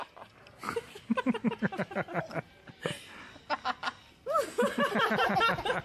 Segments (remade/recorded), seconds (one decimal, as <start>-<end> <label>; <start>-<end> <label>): 0.0-5.8 recorded